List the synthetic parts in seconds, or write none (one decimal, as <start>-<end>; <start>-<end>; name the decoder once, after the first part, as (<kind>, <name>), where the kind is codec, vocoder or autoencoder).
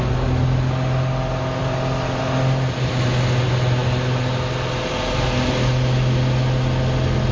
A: none